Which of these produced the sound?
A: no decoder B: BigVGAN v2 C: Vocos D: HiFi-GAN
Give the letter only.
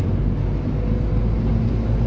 A